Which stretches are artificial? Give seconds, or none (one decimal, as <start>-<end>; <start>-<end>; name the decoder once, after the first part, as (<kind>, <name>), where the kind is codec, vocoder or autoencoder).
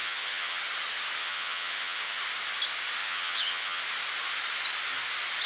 0.0-0.6 (vocoder, HiFi-GAN); 1.2-2.2; 3.0-3.8